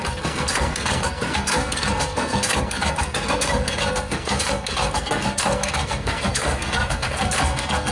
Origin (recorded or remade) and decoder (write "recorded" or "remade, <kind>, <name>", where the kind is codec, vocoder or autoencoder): remade, codec, SNAC